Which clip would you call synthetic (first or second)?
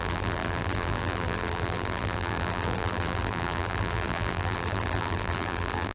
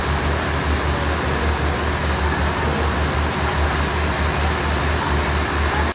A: first